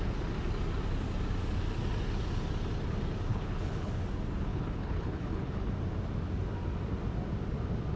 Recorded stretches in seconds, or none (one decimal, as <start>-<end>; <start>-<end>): 0.0-3.3; 3.9-4.5; 5.7-8.0